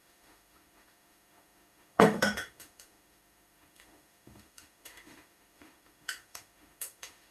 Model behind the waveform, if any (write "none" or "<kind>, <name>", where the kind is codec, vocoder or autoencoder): autoencoder, DAC-VAE